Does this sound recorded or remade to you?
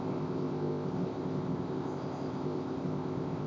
remade